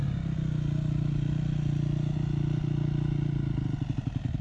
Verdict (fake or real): real